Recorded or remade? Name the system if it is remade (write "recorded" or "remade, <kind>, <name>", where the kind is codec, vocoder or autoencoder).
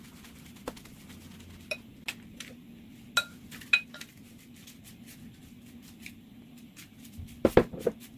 recorded